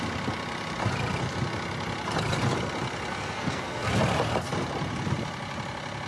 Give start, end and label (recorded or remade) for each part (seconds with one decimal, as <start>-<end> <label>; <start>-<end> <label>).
0.0-3.1 recorded; 3.1-4.0 remade; 4.0-6.1 recorded